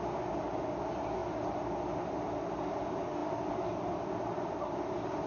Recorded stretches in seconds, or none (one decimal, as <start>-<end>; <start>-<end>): 0.0-3.2; 4.0-5.3